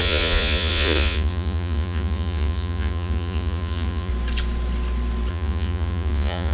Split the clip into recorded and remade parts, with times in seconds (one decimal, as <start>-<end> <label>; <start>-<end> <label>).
0.0-4.1 remade; 4.1-5.3 recorded; 5.3-6.5 remade